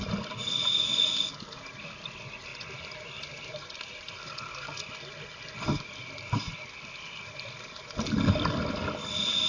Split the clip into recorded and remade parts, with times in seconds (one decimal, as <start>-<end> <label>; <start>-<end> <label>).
0.0-0.4 recorded; 0.4-1.1 remade; 1.1-9.5 recorded